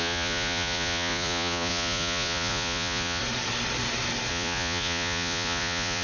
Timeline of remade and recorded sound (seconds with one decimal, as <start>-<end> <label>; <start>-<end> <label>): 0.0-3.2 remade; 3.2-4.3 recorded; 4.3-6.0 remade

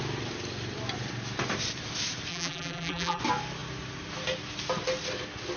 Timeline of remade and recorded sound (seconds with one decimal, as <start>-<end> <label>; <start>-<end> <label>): 0.0-2.3 recorded; 2.3-3.2 remade; 3.2-5.6 recorded

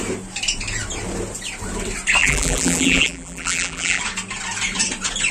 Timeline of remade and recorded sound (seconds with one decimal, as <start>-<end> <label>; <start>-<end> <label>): 0.0-2.2 recorded; 2.2-4.0 remade; 4.0-5.3 recorded

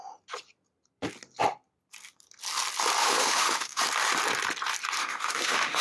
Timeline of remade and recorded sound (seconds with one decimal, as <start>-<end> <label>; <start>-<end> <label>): 0.0-3.0 recorded; 3.0-3.8 remade; 3.8-5.0 recorded; 5.0-5.8 remade